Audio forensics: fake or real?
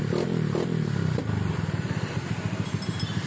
real